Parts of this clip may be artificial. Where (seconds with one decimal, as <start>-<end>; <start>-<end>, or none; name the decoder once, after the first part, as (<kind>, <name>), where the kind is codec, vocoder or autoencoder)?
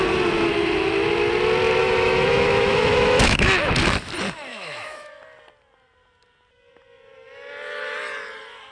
1.8-3.5 (autoencoder, DAC-VAE); 4.5-5.1